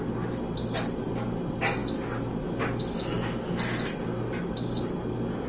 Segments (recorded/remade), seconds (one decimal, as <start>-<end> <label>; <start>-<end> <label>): 0.0-5.5 recorded